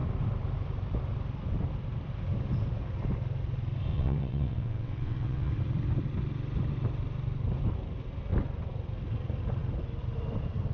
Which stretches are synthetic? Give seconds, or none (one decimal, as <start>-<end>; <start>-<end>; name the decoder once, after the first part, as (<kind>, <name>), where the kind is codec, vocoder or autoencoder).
3.9-5.5 (vocoder, WaveNeXt)